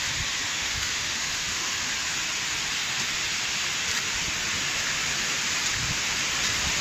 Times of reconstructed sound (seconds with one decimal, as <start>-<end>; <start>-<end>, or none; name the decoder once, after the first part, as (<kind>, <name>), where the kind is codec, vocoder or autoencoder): 0.5-1.9 (autoencoder, DAC-VAE)